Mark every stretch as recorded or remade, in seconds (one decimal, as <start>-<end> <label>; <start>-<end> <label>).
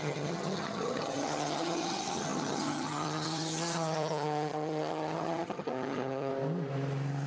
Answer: 0.0-6.3 remade; 6.3-7.3 recorded